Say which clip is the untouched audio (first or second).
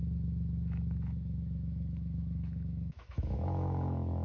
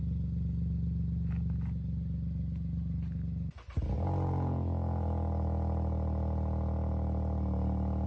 second